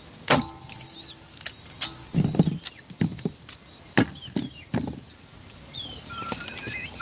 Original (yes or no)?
yes